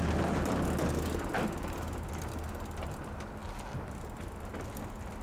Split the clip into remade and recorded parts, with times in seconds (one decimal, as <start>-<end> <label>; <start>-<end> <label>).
0.0-3.4 recorded; 3.4-4.5 remade; 4.5-5.2 recorded

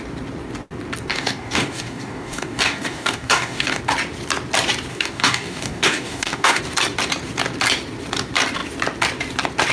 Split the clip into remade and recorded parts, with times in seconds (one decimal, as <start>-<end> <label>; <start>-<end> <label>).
0.0-1.1 recorded; 1.1-3.8 remade; 3.8-4.9 recorded; 4.9-6.6 remade; 6.6-9.7 recorded

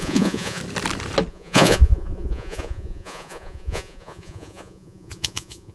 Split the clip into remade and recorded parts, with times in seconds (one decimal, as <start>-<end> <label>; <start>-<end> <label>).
0.0-0.6 remade; 0.6-1.3 recorded; 1.3-5.7 remade